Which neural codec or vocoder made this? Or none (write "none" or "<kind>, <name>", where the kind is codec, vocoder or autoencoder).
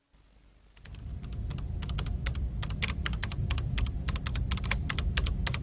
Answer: none